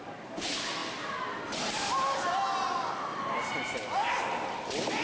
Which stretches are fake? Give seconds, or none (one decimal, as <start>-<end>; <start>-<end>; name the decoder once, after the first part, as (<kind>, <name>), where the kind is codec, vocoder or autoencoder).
none